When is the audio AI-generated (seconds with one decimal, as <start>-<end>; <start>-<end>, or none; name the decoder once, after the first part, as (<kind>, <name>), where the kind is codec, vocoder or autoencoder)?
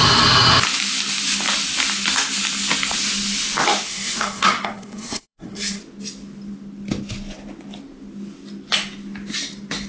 3.9-5.8 (codec, SNAC)